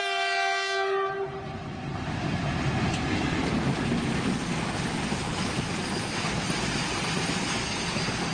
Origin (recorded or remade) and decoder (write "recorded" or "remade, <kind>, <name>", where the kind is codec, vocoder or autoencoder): recorded